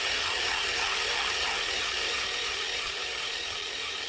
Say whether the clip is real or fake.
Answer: fake